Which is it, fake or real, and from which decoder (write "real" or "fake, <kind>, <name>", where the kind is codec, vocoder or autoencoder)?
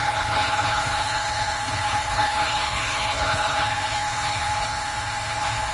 fake, codec, HILCodec